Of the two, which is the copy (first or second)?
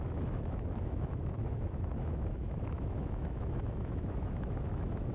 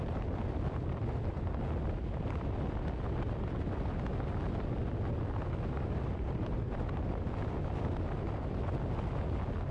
first